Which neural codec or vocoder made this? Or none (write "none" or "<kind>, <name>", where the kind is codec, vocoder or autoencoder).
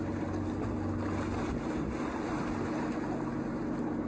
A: none